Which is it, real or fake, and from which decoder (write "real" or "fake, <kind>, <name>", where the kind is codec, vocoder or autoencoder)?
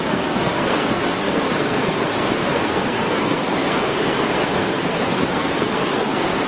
fake, codec, SNAC